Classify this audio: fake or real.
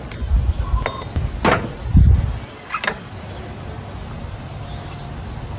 real